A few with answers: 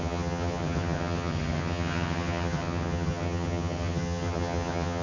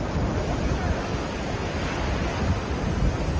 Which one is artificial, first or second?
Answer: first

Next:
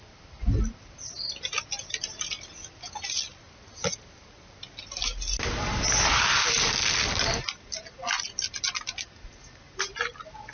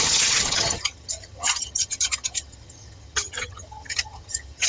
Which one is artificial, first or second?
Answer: second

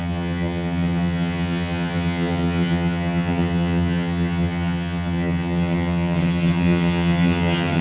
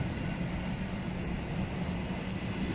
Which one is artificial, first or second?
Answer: first